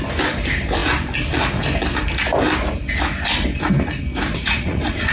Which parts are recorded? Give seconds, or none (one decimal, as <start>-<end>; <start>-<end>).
0.0-4.3